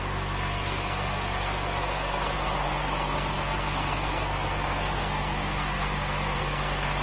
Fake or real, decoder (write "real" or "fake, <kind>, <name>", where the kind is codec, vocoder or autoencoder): fake, codec, SNAC